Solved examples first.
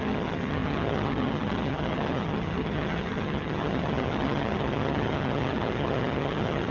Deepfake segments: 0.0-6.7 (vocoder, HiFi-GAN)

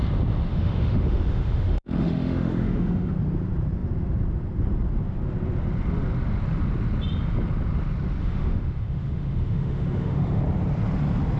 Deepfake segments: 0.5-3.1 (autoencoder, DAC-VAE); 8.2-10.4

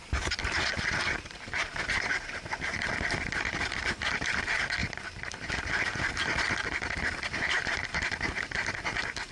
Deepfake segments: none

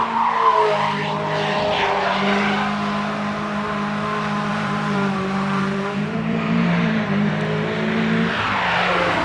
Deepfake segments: 4.5-7.3 (vocoder, BigVGAN v2)